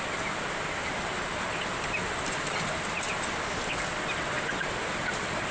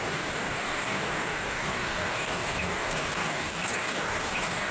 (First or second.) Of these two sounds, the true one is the first